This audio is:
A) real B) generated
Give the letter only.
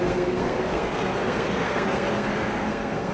B